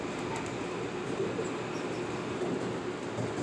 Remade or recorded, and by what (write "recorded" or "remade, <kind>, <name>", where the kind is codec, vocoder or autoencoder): recorded